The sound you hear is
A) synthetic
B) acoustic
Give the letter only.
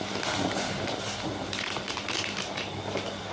B